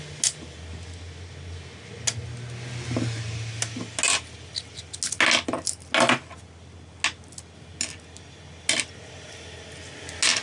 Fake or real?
real